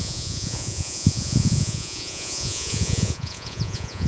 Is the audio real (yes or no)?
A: no